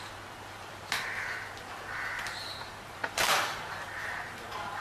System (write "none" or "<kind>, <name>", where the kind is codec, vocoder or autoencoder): none